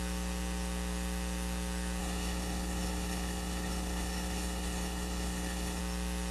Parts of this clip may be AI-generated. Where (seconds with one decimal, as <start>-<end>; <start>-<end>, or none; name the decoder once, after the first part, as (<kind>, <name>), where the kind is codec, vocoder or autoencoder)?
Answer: 2.0-5.8 (codec, HILCodec)